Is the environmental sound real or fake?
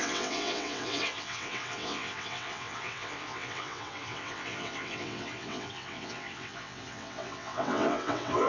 fake